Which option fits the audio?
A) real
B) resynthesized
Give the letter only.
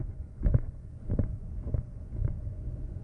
B